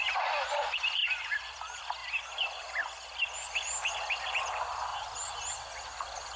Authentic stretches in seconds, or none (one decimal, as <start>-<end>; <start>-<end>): 0.0-1.0; 1.6-4.9; 5.4-6.4

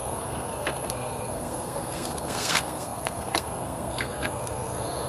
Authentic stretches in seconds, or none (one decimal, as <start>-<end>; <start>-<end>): none

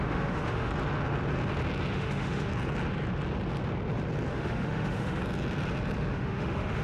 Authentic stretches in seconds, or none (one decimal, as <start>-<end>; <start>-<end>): 0.7-1.9; 2.5-4.3; 5.2-6.1

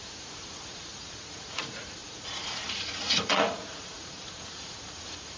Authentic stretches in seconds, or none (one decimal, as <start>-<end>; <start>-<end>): none

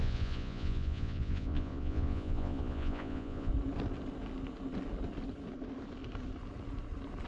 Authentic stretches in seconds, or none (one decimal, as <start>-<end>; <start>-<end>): 3.5-7.3

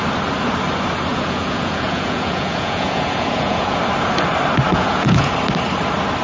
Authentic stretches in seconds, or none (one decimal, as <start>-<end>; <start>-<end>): 0.0-1.1; 3.8-4.7; 5.3-6.2